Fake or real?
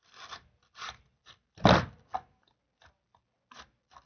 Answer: real